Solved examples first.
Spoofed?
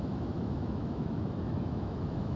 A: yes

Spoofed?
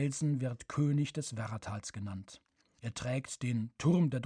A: no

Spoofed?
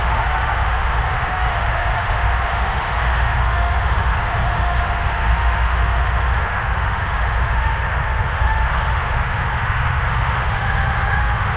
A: yes